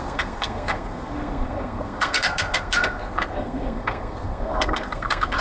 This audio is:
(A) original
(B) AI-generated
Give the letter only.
B